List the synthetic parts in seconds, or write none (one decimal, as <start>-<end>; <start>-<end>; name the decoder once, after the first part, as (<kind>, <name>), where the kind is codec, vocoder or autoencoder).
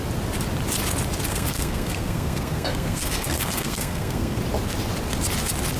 1.3-4.4 (codec, SNAC)